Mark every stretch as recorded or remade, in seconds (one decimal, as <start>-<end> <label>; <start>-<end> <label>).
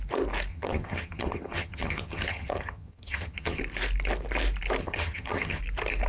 0.0-0.5 recorded; 0.5-3.6 remade; 3.6-4.8 recorded; 4.8-5.6 remade; 5.6-6.1 recorded